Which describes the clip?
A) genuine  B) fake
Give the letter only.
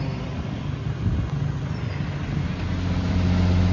A